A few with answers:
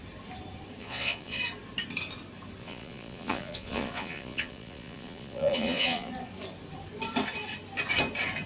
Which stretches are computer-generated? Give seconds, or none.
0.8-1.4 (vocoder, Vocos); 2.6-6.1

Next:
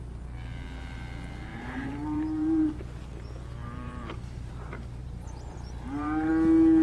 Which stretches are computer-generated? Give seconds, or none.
1.5-2.8 (vocoder, BigVGAN v2); 3.6-4.5; 5.0-6.3

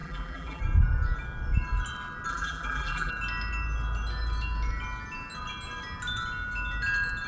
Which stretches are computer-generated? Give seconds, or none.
0.0-0.6 (vocoder, BigVGAN v2); 2.3-3.1